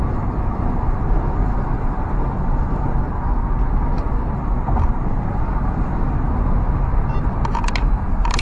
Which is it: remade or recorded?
recorded